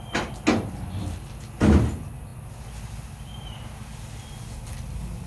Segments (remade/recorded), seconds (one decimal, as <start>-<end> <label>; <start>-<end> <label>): 0.0-5.3 recorded